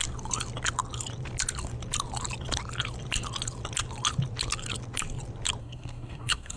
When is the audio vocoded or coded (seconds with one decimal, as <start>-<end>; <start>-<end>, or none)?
5.6-6.6